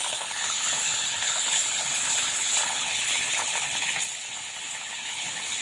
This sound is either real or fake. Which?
fake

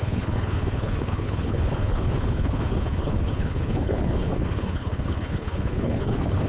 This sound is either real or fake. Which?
fake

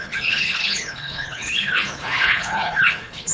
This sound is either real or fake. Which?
fake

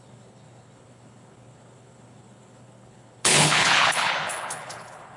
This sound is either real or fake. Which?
fake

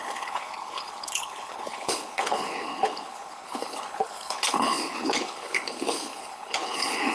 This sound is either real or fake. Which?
fake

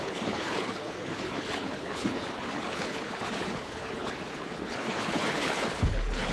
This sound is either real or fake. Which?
fake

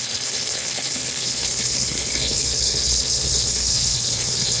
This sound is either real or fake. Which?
fake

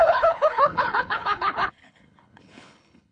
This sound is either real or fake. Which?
fake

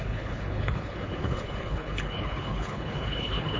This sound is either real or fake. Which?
fake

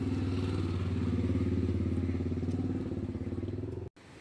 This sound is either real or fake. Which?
real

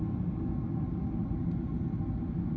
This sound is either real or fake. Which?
real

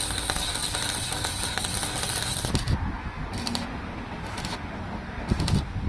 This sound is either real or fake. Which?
real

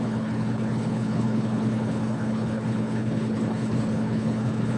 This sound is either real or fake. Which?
fake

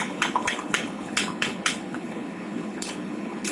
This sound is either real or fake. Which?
fake